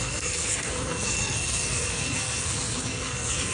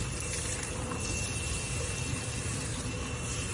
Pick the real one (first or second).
second